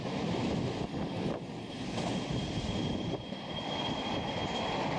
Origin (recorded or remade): recorded